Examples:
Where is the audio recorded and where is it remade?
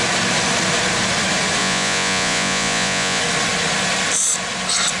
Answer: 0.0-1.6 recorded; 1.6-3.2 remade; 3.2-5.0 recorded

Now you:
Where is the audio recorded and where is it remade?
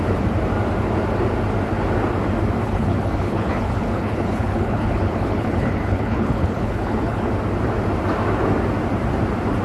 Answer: 0.0-2.6 recorded; 2.6-7.3 remade; 7.3-9.6 recorded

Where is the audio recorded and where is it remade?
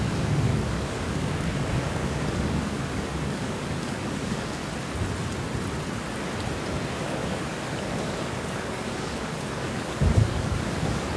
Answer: 0.0-4.6 remade; 4.6-6.9 recorded; 6.9-11.2 remade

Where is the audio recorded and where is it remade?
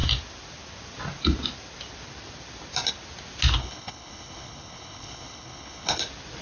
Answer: 0.0-3.6 recorded; 3.6-6.0 remade; 6.0-6.4 recorded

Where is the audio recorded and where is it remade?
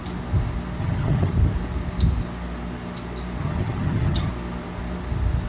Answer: 0.0-0.8 recorded; 0.8-1.3 remade; 1.3-3.4 recorded; 3.4-4.3 remade; 4.3-5.5 recorded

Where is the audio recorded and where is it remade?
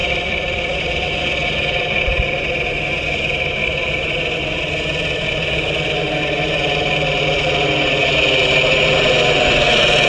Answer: 0.0-1.2 remade; 1.2-8.4 recorded; 8.4-9.1 remade; 9.1-10.1 recorded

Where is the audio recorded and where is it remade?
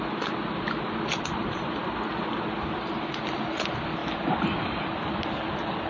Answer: 0.0-5.9 recorded